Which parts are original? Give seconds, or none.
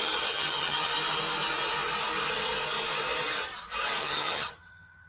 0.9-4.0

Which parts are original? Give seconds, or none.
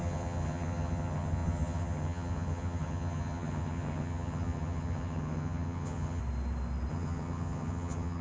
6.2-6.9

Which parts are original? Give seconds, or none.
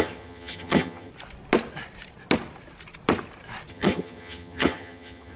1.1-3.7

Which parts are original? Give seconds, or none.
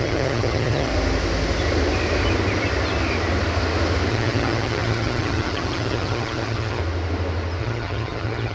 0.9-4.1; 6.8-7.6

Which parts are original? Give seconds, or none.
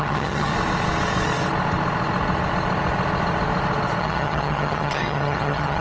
0.5-4.0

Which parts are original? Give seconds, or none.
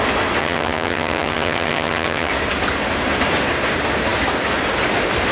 0.0-0.4; 2.3-5.3